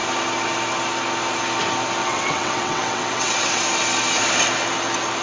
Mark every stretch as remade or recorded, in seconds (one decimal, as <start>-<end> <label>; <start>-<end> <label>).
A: 0.0-2.0 recorded; 2.0-3.6 remade; 3.6-5.2 recorded